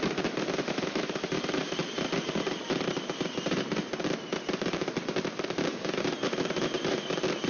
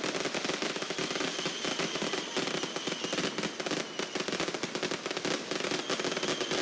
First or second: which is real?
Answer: second